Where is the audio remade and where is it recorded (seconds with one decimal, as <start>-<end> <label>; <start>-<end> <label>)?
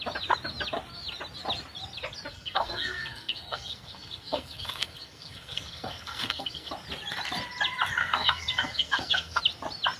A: 0.0-2.3 recorded; 2.3-6.7 remade; 6.7-8.0 recorded; 8.0-9.4 remade; 9.4-10.0 recorded